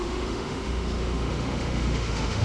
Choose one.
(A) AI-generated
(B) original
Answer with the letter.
A